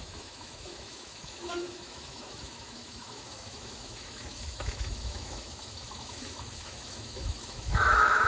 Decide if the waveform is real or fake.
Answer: fake